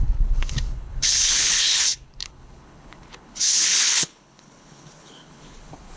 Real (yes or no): no